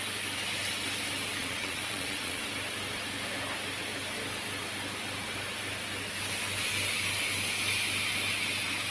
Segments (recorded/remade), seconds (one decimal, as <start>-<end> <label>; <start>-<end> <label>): 0.0-1.4 recorded; 1.4-2.4 remade; 2.4-8.9 recorded

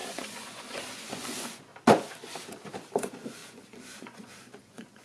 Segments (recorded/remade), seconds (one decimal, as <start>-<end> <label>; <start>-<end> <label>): 0.0-1.7 remade; 1.7-3.0 recorded; 3.0-5.0 remade

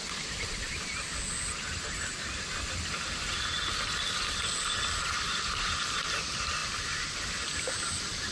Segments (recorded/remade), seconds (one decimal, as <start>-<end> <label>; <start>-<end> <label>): 0.0-8.3 recorded

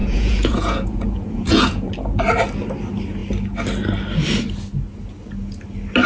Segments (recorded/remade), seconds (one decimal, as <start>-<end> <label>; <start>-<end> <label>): 0.0-1.9 remade; 1.9-6.1 recorded